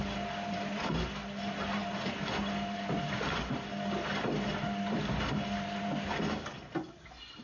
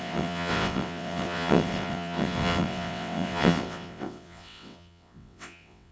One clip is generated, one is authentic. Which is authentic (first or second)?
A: first